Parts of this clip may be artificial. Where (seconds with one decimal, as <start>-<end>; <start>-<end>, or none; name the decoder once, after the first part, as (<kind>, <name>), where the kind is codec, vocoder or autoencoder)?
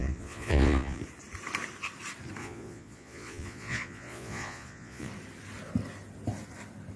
0.0-1.0 (vocoder, Vocos); 2.4-5.1